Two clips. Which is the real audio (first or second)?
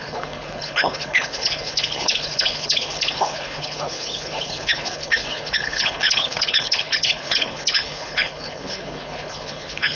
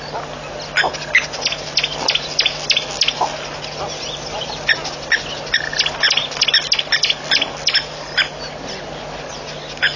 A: second